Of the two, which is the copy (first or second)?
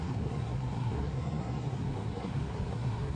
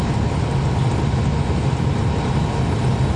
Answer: first